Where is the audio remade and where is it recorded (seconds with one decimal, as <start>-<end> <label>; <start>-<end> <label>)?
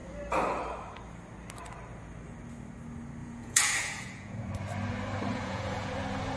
0.0-3.2 recorded; 3.2-4.5 remade; 4.5-5.3 recorded; 5.3-5.9 remade; 5.9-6.4 recorded